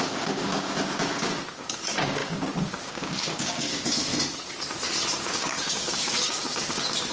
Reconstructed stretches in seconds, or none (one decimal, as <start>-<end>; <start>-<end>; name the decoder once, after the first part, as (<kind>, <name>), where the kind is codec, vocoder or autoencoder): 0.0-4.1 (codec, DAC); 5.2-7.1